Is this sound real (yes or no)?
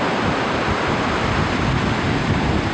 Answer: yes